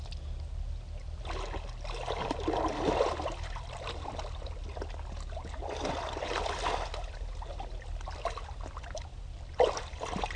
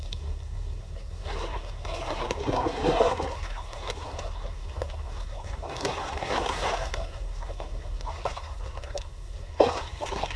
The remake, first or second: second